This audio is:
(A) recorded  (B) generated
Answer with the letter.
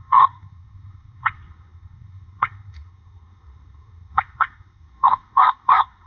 B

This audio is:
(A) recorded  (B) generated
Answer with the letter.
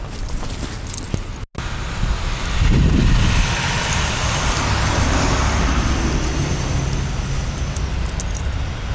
A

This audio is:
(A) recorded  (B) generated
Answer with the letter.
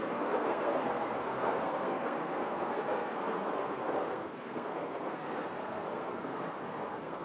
B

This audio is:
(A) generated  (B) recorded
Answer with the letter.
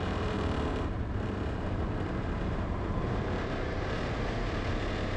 A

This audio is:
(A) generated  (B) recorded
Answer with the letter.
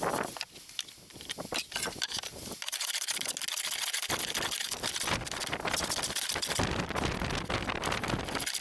B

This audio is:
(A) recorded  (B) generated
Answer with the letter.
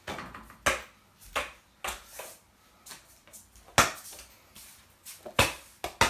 A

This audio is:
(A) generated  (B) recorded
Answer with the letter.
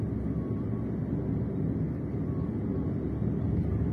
B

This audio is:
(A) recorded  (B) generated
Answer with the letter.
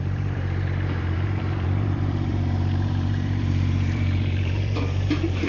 B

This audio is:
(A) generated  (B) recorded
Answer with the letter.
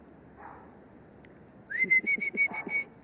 B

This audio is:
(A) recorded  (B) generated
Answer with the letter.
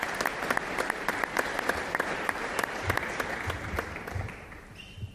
B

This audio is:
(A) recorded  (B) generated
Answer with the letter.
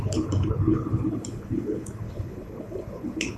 B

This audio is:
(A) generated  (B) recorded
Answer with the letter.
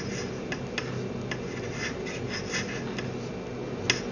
B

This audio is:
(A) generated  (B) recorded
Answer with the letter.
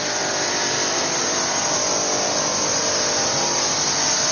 B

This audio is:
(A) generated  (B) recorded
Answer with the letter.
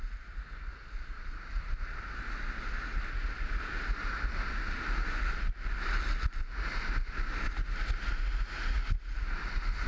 B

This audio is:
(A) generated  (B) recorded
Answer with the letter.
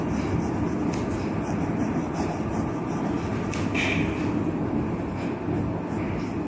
B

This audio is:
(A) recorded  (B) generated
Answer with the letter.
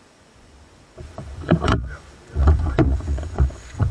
B